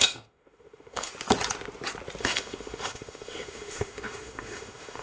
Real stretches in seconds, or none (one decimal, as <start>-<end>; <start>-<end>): 1.1-2.2